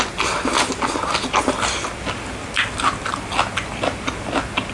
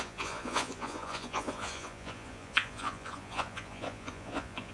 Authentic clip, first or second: first